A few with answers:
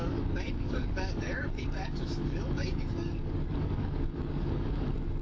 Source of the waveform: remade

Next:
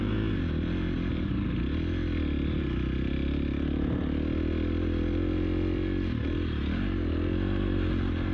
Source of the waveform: recorded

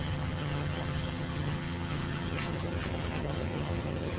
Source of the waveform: remade